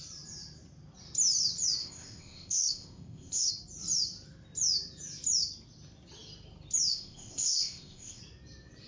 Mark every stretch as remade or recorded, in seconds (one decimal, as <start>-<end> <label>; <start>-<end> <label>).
0.0-1.8 recorded; 1.8-3.5 remade; 3.5-6.9 recorded; 6.9-8.2 remade; 8.2-8.9 recorded